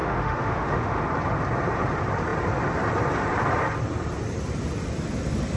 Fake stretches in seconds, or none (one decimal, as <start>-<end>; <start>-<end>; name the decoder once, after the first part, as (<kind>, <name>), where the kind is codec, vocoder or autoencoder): 0.0-1.0 (autoencoder, DAC-VAE)